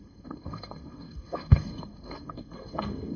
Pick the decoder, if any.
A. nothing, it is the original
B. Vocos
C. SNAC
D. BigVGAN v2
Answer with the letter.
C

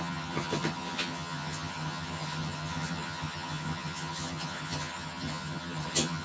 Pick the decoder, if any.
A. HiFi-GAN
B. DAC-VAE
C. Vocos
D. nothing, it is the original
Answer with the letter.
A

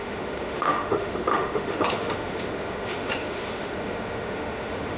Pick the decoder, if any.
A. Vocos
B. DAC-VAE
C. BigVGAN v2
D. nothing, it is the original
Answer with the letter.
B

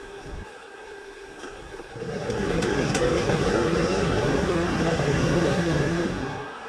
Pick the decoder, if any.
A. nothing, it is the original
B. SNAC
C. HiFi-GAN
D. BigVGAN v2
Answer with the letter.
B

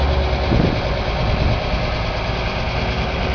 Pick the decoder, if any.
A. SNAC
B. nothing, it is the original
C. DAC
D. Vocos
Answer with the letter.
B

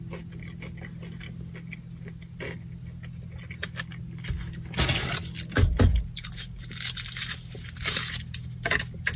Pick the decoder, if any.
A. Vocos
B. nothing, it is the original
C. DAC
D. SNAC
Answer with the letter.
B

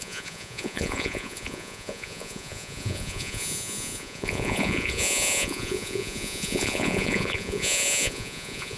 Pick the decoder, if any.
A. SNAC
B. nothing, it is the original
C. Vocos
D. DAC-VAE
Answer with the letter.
C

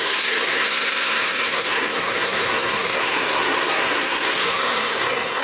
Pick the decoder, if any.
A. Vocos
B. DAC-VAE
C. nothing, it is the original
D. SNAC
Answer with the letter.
D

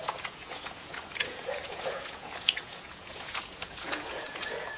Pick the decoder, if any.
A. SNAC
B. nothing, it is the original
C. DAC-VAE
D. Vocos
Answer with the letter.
D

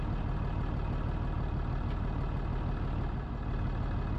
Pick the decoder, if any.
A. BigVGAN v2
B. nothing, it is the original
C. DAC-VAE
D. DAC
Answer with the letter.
B